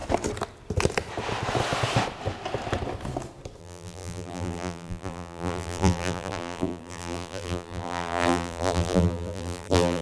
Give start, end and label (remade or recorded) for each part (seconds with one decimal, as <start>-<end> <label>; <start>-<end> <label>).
0.0-3.6 recorded; 3.6-10.0 remade